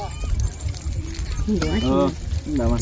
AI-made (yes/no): no